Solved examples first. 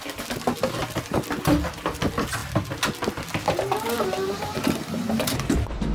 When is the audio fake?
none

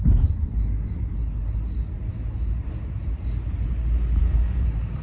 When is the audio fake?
0.0-1.4 (vocoder, BigVGAN v2); 4.2-5.0

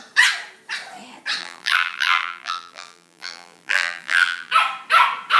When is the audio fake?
1.4-4.5 (vocoder, BigVGAN v2)

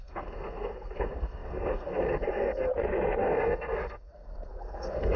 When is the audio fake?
0.0-2.7 (codec, SNAC); 3.2-5.2

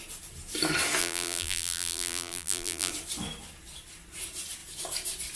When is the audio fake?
1.0-2.9 (vocoder, BigVGAN v2)

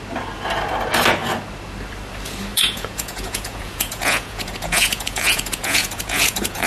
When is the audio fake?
2.5-6.7 (vocoder, Vocos)